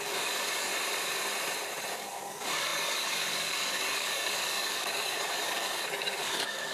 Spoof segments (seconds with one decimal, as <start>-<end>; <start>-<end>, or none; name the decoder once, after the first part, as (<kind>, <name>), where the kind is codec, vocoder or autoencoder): 0.0-0.7 (codec, DAC); 1.9-6.7